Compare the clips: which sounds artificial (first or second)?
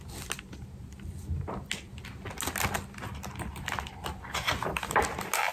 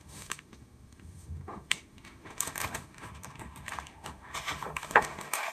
second